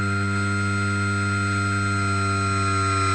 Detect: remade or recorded recorded